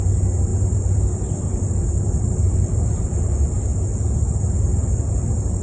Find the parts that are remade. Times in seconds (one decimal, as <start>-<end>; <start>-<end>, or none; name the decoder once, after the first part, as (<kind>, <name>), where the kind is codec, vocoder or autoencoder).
0.5-3.3 (vocoder, BigVGAN v2)

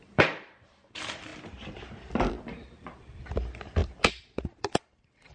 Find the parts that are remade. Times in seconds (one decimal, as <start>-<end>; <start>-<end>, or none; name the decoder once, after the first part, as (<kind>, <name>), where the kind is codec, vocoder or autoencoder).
0.0-1.3 (vocoder, BigVGAN v2); 2.3-5.3